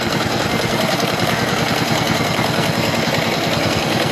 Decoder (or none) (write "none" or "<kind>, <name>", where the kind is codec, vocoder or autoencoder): codec, SNAC